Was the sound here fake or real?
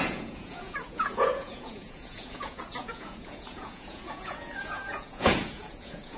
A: fake